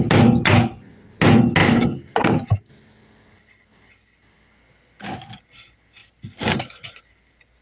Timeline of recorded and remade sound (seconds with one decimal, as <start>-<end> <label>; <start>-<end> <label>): 0.0-7.6 recorded